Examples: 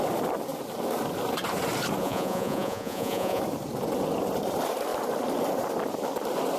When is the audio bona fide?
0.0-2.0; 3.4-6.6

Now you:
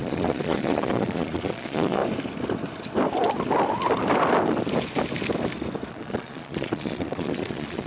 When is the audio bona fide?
2.0-5.9

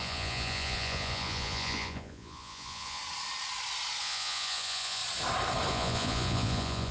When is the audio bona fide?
3.0-4.0; 5.0-5.7

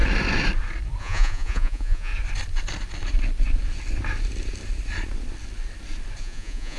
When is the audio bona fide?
0.0-1.0; 2.1-6.2

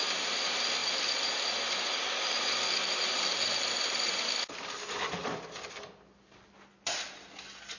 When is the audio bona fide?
0.0-7.8

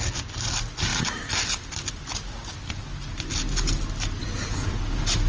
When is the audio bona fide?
0.0-4.2; 4.8-5.3

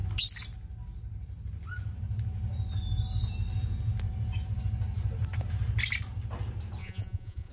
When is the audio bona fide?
0.0-6.8